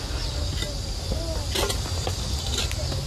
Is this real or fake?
real